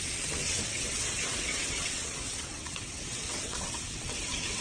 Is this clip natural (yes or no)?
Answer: no